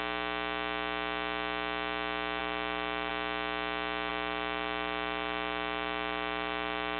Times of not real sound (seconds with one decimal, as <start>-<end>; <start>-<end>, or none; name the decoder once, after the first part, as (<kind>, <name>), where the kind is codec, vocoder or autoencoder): 2.4-3.1 (autoencoder, DAC-VAE); 4.1-7.0